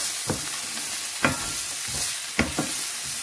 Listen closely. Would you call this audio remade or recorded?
recorded